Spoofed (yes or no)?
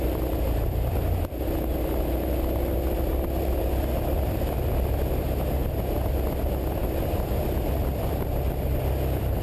no